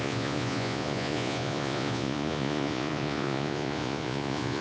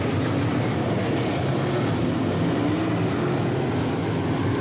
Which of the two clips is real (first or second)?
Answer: second